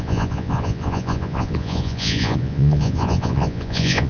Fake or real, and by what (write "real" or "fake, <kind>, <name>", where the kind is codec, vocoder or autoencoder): fake, vocoder, Vocos